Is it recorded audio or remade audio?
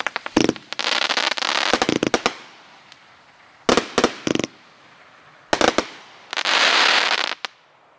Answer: recorded